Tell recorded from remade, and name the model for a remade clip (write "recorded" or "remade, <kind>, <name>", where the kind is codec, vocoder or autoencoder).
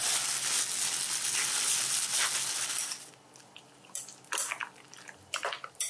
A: recorded